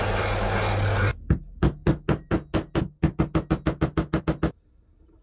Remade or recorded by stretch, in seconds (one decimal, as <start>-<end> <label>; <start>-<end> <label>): 0.0-5.2 recorded